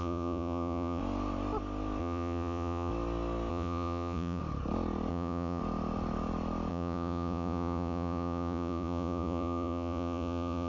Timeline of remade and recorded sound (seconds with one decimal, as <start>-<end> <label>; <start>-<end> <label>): 0.0-1.0 remade; 1.0-2.0 recorded; 2.0-2.9 remade; 2.9-3.5 recorded; 3.5-4.4 remade; 4.4-5.1 recorded; 5.1-5.6 remade; 5.6-6.7 recorded; 6.7-10.7 remade